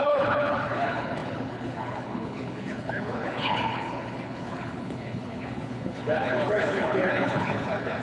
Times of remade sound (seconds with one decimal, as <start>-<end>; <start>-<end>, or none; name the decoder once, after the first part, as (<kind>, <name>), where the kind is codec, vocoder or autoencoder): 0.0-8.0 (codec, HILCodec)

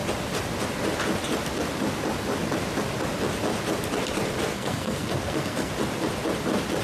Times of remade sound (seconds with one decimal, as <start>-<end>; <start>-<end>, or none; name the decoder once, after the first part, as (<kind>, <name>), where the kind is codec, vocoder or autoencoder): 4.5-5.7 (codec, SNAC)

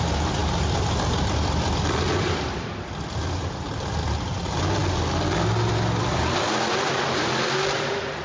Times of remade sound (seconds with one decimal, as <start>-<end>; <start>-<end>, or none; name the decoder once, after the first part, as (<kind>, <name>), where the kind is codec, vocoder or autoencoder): none

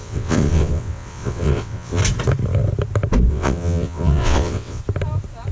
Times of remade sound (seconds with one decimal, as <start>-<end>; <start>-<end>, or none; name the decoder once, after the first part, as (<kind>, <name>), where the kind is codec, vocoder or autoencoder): 0.0-2.0 (vocoder, WaveNeXt); 3.3-4.8

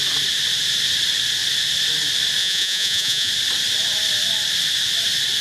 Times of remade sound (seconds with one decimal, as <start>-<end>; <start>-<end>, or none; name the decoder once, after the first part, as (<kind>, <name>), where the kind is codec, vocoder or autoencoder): 2.4-3.3 (vocoder, Vocos)

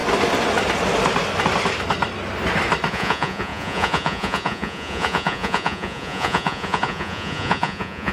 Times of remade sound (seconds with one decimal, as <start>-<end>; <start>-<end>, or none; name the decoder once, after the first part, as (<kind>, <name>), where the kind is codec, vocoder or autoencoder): 2.9-8.1 (vocoder, Vocos)

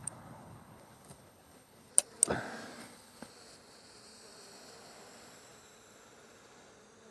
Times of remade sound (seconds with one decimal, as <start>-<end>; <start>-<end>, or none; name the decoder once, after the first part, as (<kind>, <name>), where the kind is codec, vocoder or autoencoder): 0.0-1.9 (codec, HILCodec); 2.8-3.3